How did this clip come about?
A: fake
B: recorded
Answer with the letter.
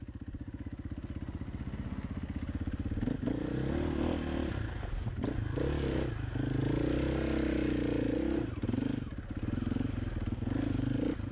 B